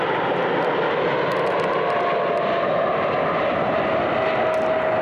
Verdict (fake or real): real